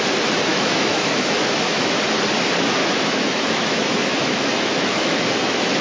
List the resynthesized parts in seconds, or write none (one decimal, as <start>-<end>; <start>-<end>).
0.5-2.0; 2.8-5.8